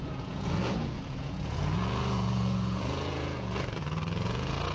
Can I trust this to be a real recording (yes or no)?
no